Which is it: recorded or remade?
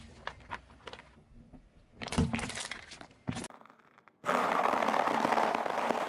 recorded